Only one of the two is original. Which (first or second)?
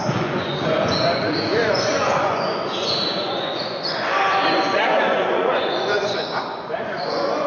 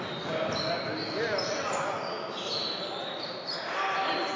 second